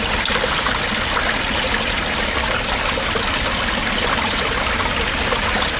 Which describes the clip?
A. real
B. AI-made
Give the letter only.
A